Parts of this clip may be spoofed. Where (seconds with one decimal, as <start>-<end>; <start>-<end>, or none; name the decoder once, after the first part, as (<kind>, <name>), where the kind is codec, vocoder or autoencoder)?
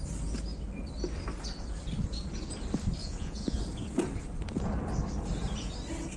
3.0-3.6 (vocoder, Vocos)